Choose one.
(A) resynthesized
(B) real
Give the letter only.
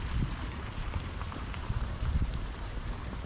A